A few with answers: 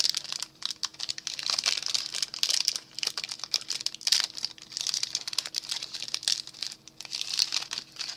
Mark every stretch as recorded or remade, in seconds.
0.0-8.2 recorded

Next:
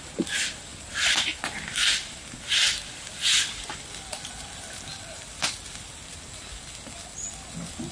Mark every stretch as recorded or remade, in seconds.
0.0-7.9 recorded

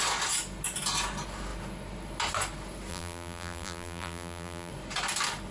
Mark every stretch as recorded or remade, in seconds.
0.0-2.9 recorded; 2.9-4.7 remade; 4.7-5.5 recorded